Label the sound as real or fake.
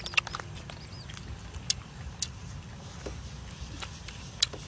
real